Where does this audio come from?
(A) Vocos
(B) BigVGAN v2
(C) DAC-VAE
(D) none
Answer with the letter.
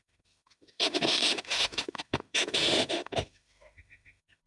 C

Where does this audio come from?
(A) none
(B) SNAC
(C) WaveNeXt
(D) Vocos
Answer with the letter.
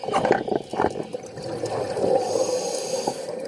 A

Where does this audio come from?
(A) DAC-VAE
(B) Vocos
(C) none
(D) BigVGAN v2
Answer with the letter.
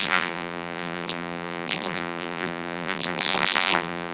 D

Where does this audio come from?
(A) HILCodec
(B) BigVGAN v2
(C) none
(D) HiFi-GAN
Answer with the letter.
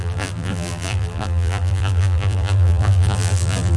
B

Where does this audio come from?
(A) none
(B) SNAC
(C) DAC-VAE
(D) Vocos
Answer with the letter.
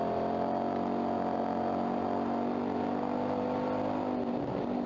A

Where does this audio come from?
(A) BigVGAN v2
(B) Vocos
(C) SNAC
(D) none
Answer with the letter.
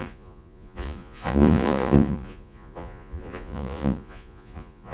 B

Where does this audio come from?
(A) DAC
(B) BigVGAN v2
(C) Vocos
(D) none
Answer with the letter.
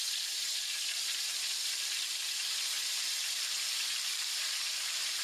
B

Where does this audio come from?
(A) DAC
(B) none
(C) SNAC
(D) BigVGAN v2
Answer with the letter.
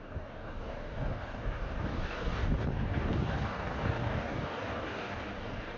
A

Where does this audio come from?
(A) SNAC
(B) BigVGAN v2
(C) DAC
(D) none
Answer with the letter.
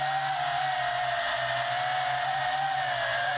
D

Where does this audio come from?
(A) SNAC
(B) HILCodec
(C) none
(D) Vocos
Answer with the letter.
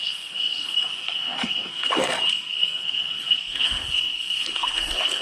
A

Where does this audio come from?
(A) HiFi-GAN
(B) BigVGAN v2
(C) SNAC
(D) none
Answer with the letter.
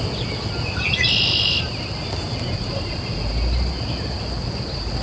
D